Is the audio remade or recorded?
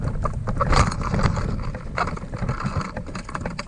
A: recorded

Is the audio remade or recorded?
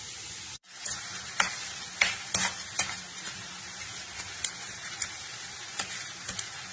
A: recorded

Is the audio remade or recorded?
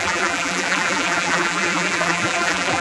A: remade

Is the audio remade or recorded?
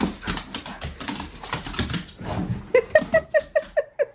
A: recorded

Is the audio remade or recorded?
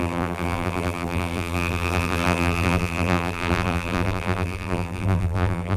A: remade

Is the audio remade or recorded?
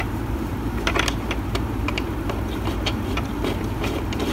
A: remade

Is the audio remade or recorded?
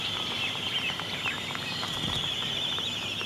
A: remade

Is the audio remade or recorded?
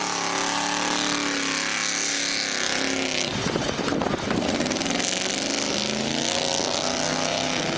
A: recorded